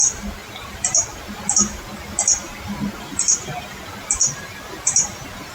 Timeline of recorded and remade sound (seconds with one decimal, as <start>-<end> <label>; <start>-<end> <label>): 0.0-5.5 recorded